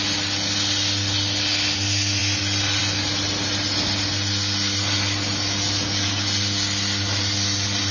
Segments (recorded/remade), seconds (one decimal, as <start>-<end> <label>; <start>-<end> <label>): 0.0-7.9 recorded